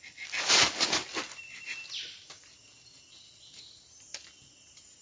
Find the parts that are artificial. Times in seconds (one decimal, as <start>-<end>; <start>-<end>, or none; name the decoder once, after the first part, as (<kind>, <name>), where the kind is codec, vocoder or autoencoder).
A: none